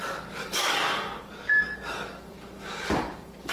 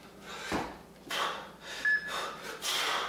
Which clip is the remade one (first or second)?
first